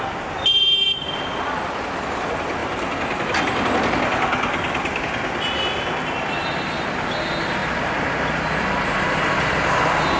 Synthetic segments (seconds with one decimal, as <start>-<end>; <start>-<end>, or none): none